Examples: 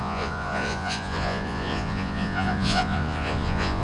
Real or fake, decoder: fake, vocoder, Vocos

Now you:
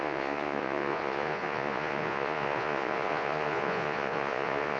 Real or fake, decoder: fake, vocoder, Vocos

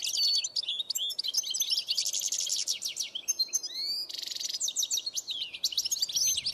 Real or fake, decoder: real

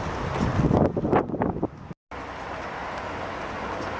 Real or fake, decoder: real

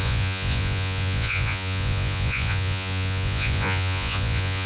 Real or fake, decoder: fake, vocoder, Vocos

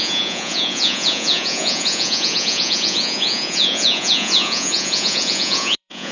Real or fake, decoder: fake, vocoder, Vocos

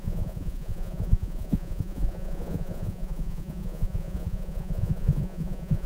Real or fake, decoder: fake, vocoder, Vocos